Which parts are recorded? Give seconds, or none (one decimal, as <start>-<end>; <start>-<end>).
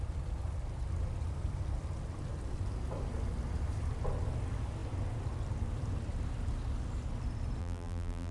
0.0-7.6